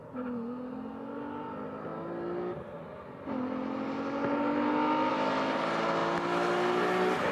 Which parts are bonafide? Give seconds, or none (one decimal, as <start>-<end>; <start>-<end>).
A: 0.0-7.3